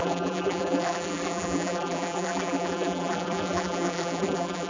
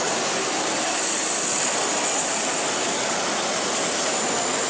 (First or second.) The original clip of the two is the second